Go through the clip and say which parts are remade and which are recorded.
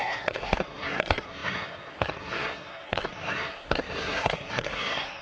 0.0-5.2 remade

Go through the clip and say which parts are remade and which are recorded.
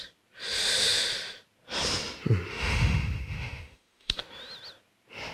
0.0-2.5 recorded; 2.5-4.2 remade; 4.2-5.3 recorded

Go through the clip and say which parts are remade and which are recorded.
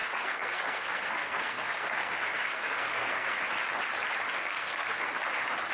0.0-3.4 remade; 3.4-4.5 recorded; 4.5-5.1 remade; 5.1-5.7 recorded